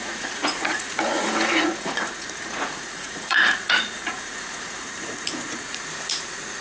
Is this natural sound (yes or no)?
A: no